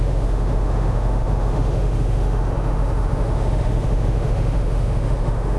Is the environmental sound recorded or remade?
remade